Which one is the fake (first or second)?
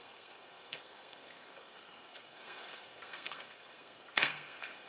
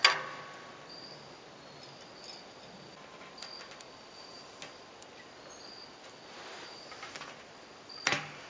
first